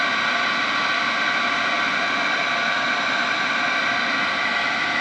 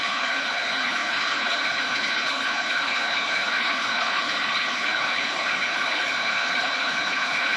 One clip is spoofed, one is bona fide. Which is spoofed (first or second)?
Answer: second